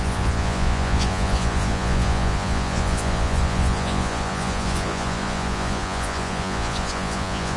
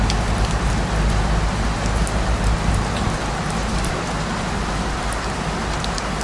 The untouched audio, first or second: second